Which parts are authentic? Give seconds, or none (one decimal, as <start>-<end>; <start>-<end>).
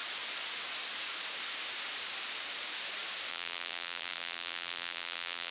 0.0-3.3